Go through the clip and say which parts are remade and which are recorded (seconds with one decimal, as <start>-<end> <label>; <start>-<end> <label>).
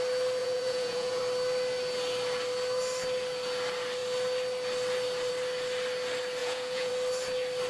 0.0-0.4 recorded; 0.4-1.2 remade; 1.2-6.4 recorded; 6.4-6.9 remade; 6.9-7.7 recorded